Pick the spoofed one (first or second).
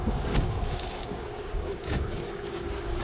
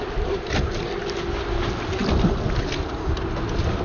first